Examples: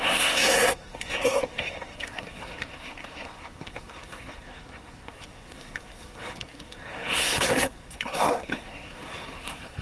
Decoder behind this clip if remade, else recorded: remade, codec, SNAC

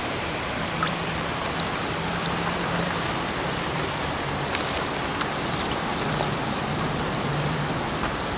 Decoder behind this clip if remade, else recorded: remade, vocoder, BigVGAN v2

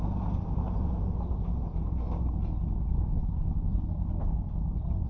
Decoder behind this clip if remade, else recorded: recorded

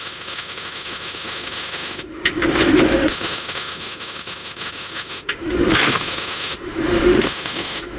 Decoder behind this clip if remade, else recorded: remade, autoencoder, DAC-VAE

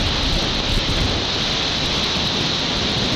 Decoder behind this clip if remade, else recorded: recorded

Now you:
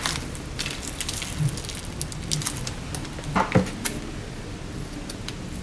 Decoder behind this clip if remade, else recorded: recorded